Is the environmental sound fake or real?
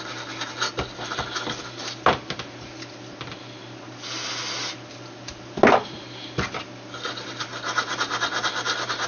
real